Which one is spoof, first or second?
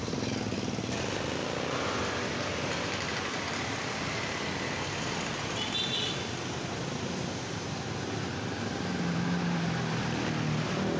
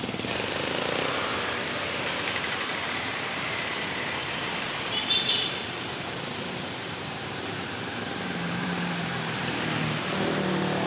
second